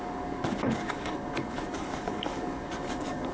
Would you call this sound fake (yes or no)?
yes